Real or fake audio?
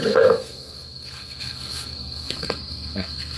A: fake